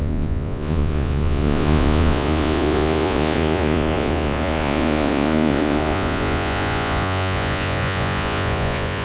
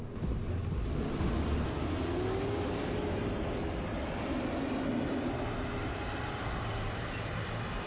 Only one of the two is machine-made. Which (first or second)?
first